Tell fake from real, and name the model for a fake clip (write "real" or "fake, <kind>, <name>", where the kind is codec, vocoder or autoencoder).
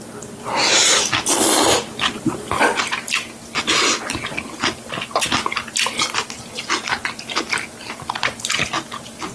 real